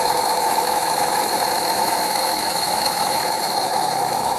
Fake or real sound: fake